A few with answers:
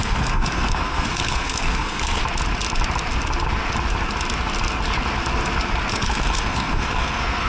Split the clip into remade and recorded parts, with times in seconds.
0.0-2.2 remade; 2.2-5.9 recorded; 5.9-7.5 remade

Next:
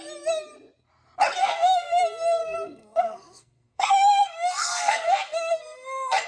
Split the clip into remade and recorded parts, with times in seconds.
0.0-1.4 recorded; 1.4-2.0 remade; 2.0-2.4 recorded; 2.4-6.3 remade